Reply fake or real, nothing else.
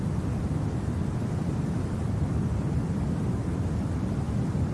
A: fake